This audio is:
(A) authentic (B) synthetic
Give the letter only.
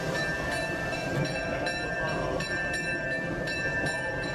B